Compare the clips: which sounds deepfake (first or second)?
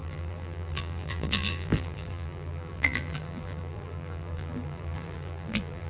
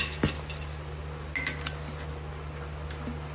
first